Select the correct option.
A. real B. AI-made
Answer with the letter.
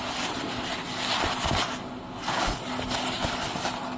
A